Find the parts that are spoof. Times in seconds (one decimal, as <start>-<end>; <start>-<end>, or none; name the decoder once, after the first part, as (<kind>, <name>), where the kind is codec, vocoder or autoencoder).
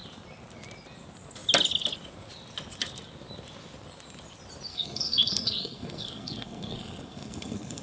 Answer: 4.7-7.8 (codec, SNAC)